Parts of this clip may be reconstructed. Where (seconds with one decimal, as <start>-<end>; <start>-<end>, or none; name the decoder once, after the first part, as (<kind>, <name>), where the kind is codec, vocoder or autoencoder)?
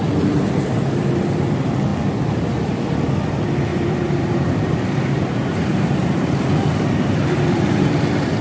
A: 3.7-6.4 (vocoder, BigVGAN v2)